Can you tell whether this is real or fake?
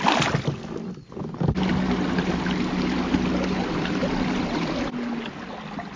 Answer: real